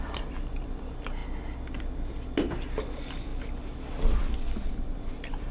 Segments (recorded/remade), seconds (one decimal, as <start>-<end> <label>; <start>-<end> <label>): 0.0-5.5 recorded